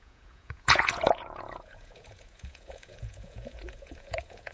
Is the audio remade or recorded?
remade